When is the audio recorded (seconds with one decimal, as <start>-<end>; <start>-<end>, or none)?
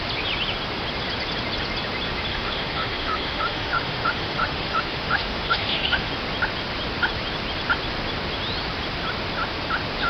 0.0-2.3; 6.1-10.1